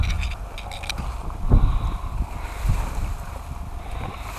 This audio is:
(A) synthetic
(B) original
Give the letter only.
B